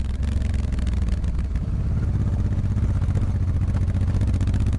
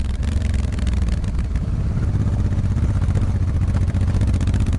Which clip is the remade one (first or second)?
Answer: second